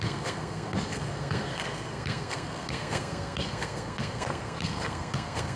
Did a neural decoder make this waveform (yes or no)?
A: yes